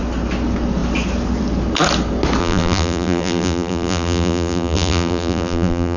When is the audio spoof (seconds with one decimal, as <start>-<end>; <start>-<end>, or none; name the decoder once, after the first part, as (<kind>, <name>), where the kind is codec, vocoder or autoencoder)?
2.4-6.0 (vocoder, BigVGAN v2)